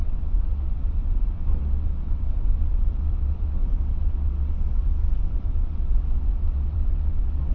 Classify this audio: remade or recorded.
remade